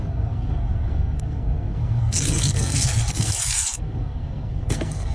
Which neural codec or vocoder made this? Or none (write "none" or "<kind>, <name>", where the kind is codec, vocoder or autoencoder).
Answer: codec, SNAC